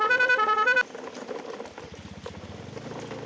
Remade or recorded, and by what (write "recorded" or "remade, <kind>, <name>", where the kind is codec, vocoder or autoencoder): recorded